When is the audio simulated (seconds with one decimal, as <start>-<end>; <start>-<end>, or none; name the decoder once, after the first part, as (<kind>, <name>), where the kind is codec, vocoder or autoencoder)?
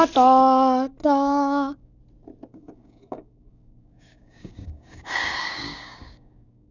1.0-2.0 (codec, DAC); 2.5-6.7